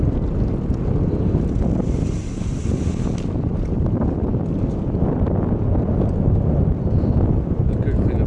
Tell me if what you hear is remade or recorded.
recorded